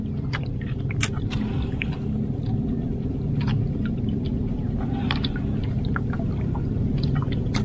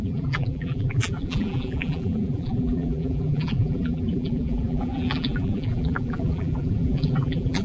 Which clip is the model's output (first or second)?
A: second